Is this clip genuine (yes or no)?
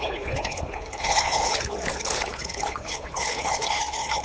no